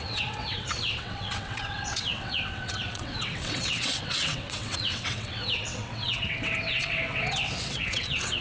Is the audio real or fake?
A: fake